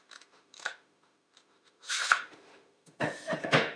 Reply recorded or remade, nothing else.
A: remade